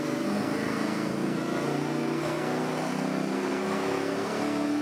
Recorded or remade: remade